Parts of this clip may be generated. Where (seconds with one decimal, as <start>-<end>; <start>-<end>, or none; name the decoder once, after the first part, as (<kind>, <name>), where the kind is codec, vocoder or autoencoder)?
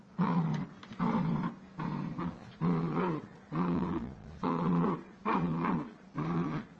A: 0.0-0.5 (vocoder, Vocos); 2.2-6.8